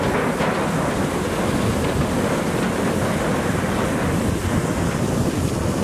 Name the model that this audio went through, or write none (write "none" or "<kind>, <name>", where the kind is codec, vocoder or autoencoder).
none